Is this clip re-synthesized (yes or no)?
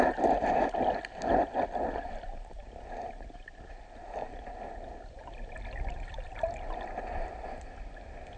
no